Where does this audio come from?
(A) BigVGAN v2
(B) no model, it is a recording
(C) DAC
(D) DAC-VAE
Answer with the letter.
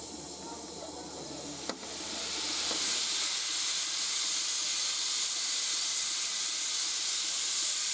B